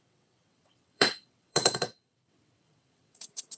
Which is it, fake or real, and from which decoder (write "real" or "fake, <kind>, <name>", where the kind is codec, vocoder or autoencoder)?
fake, vocoder, WaveNeXt